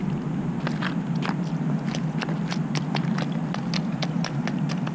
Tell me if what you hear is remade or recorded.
recorded